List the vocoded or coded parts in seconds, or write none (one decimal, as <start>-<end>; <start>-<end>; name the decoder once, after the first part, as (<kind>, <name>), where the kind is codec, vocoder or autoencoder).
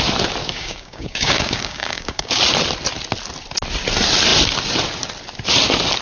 0.4-2.4 (codec, DAC)